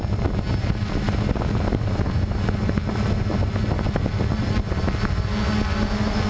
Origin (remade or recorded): recorded